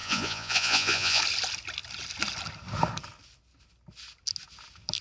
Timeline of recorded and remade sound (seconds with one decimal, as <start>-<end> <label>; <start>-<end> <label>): 0.0-1.2 remade; 1.2-5.0 recorded